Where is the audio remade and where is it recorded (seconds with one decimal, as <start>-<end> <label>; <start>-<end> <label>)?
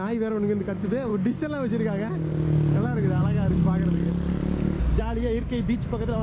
0.0-1.1 remade; 1.1-2.7 recorded; 2.7-3.2 remade; 3.2-5.0 recorded; 5.0-6.2 remade